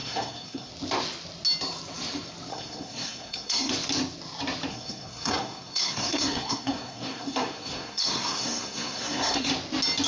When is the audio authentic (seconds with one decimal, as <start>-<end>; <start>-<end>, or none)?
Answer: 0.7-2.5; 3.7-4.7; 9.5-10.1